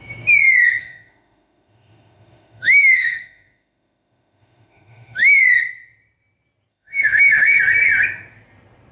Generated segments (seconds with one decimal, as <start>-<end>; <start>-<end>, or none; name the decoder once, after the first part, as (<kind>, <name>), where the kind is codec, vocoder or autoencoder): 0.8-5.4 (autoencoder, DAC-VAE); 6.7-7.6